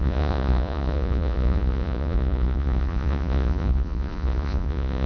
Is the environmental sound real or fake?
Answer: fake